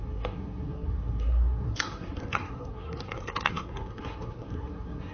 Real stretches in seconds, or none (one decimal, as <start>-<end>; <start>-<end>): none